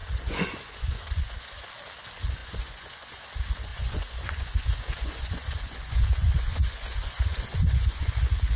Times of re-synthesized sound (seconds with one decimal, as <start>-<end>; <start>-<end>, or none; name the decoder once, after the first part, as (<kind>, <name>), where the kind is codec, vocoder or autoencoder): 0.0-1.7 (vocoder, Vocos); 2.4-3.3; 3.7-8.1